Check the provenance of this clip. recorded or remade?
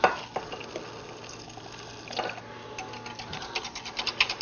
recorded